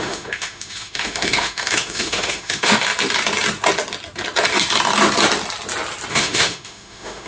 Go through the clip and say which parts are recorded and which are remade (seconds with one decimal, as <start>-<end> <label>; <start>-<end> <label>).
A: 0.0-2.9 remade; 2.9-6.1 recorded; 6.1-7.3 remade